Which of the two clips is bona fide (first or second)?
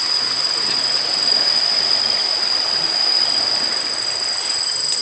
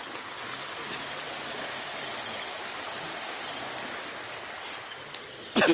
second